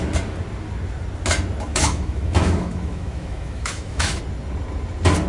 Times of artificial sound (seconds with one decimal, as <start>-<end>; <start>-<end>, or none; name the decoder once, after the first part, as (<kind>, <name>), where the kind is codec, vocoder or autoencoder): 1.7-4.2 (autoencoder, DAC-VAE)